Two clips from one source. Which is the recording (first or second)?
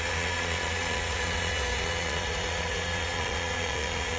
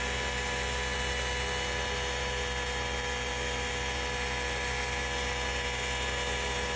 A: second